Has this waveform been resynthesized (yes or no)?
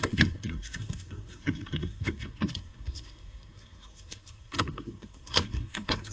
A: yes